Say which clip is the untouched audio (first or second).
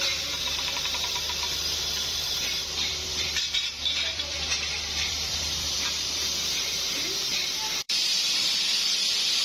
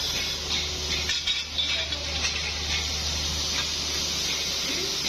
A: second